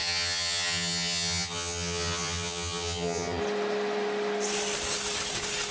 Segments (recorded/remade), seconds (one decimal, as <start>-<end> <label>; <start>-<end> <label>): 0.0-3.4 remade; 3.4-5.7 recorded